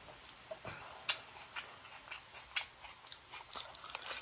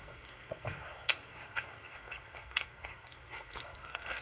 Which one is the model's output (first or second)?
second